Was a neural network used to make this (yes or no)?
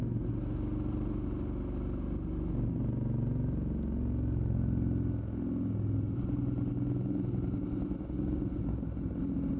no